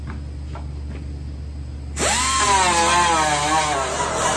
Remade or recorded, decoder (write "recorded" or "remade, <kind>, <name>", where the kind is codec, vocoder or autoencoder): recorded